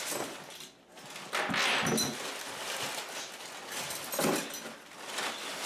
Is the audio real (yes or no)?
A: yes